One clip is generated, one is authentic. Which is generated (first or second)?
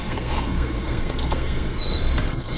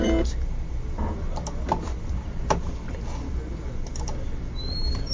first